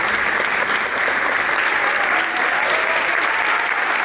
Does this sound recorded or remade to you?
recorded